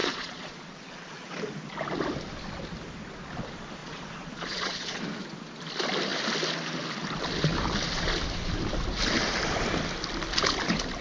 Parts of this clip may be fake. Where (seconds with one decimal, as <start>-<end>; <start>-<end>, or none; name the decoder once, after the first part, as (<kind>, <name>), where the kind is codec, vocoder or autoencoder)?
0.0-1.3 (vocoder, Vocos); 3.8-5.0